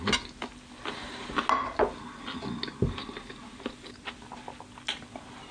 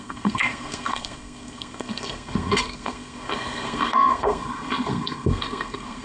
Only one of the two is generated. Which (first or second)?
second